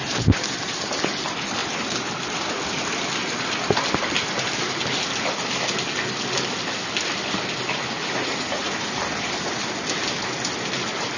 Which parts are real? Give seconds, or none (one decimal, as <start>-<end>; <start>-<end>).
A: 0.0-8.2; 8.7-11.2